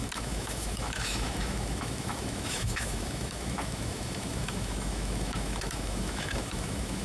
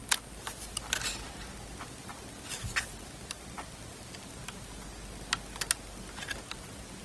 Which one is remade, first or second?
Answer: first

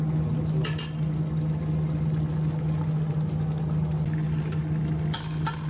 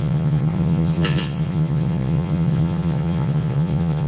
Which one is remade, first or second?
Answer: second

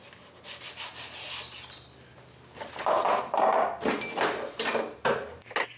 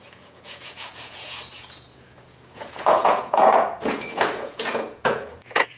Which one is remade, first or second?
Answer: second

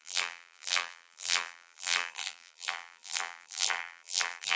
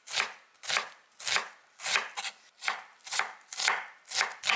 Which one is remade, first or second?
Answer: first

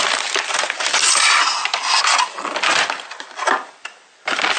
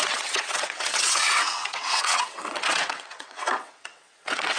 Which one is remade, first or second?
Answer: second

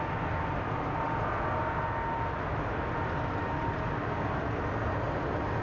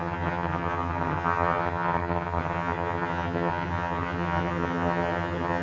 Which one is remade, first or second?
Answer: second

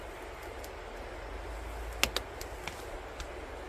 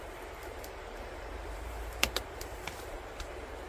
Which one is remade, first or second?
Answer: second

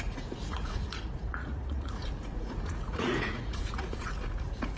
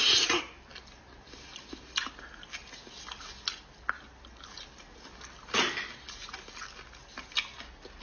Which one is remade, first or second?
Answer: first